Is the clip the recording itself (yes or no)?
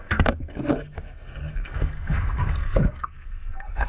no